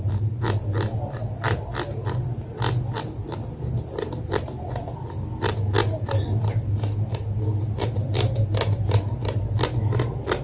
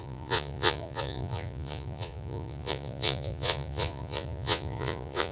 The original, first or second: first